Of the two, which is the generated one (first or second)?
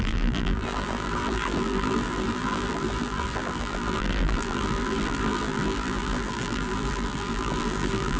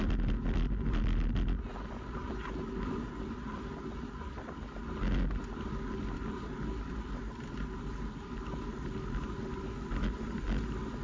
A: first